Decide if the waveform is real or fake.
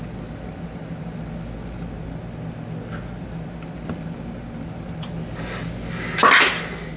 real